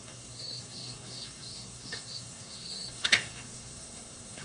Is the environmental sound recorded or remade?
remade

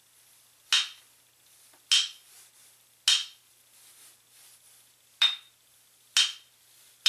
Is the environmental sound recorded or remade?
recorded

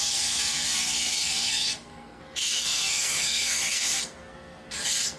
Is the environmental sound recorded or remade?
remade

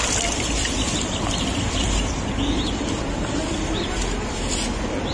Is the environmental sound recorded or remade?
remade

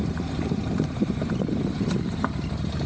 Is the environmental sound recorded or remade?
remade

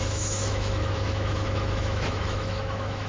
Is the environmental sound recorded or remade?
remade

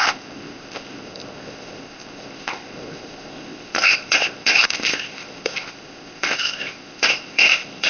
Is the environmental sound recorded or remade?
remade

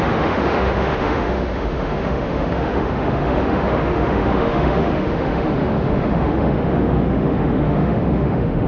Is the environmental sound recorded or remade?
remade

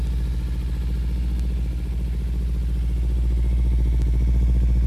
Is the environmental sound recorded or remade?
recorded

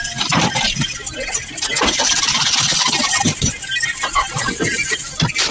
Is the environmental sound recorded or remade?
remade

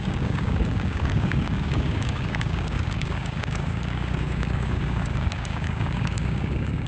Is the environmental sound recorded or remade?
remade